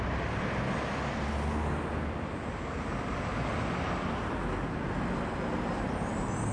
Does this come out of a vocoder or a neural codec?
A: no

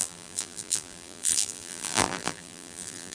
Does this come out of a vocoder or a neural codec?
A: yes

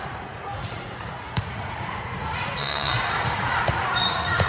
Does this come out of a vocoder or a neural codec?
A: yes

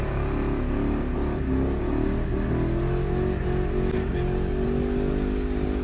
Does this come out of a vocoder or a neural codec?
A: no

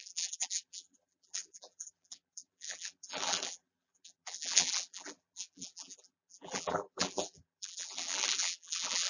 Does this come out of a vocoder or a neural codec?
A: yes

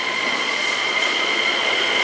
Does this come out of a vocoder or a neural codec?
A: yes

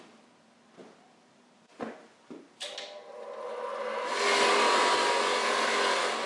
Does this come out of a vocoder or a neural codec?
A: no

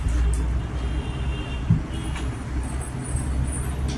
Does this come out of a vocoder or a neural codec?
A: no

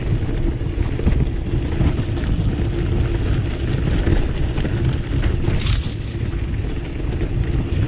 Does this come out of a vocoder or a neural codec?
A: no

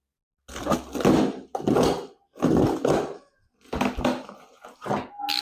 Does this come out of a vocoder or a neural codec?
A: no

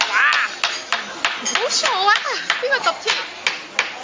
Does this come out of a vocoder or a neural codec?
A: no